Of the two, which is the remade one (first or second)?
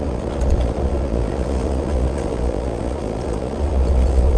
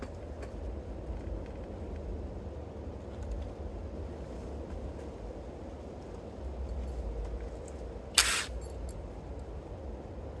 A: first